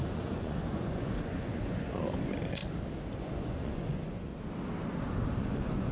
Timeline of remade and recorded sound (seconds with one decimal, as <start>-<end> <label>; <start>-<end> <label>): 0.0-2.6 remade; 2.6-3.2 recorded; 3.2-4.3 remade; 4.3-5.4 recorded; 5.4-5.9 remade

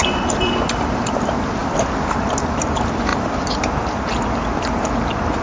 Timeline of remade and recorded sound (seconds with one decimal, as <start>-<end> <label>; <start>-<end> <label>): 0.0-5.4 recorded

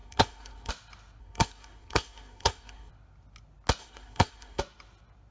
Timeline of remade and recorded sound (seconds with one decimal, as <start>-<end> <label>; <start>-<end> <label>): 0.0-0.7 remade; 0.7-1.2 recorded; 1.2-2.9 remade; 2.9-3.8 recorded; 3.8-4.6 remade; 4.6-5.3 recorded

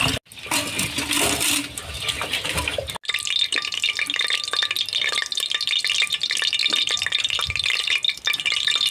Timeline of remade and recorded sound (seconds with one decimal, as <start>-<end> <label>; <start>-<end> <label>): 0.0-8.9 recorded